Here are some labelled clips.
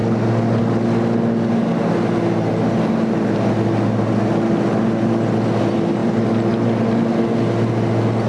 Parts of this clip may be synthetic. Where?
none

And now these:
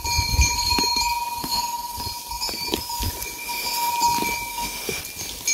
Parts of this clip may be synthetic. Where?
1.4-2.0 (autoencoder, DAC-VAE); 3.4-3.9; 4.5-5.0

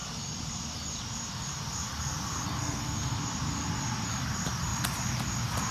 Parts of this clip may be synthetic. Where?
2.6-3.2 (codec, SNAC)